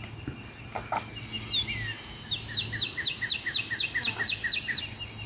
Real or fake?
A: real